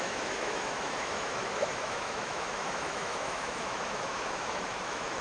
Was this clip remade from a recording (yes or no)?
yes